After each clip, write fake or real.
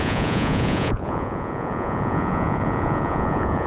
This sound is fake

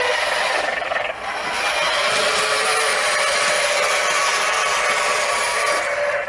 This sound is real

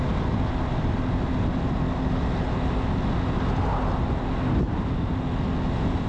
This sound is real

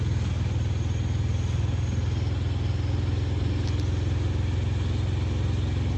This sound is real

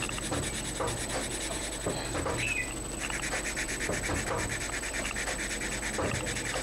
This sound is real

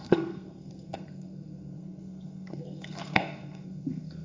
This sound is fake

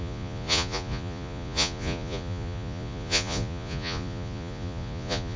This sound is fake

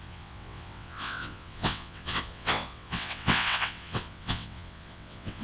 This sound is fake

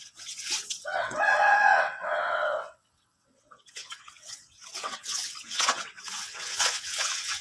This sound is fake